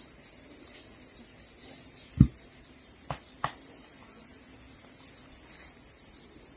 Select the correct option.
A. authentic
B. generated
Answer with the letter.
A